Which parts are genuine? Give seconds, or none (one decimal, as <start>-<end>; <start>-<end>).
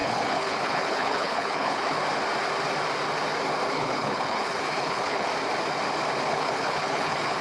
2.0-3.7; 5.3-6.3